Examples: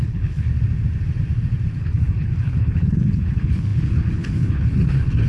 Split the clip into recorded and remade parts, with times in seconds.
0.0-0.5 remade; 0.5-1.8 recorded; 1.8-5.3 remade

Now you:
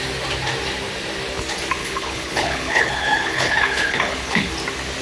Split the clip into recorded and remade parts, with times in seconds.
0.0-1.8 recorded; 1.8-4.5 remade; 4.5-5.0 recorded

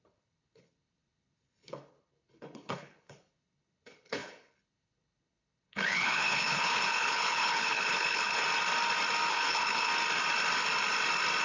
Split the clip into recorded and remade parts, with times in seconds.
0.0-8.4 remade; 8.4-9.3 recorded; 9.3-9.9 remade; 9.9-11.4 recorded